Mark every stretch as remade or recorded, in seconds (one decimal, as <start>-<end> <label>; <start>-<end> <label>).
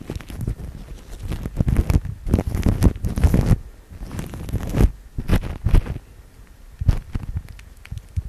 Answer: 0.0-0.9 recorded; 0.9-1.4 remade; 1.4-8.3 recorded